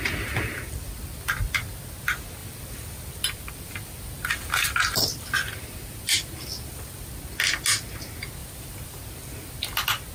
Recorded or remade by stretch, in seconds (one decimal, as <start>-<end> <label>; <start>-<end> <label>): 0.0-2.4 recorded; 2.4-7.1 remade; 7.1-8.4 recorded; 8.4-9.0 remade; 9.0-10.1 recorded